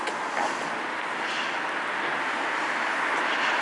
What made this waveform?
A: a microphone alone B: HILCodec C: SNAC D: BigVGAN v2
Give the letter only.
A